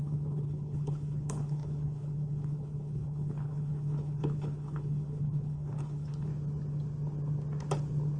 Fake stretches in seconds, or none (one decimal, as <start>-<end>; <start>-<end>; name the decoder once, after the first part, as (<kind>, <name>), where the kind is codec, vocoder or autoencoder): 0.0-6.3 (codec, HILCodec)